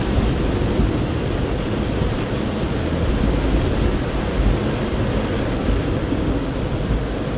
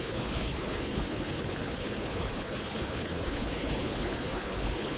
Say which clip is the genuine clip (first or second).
first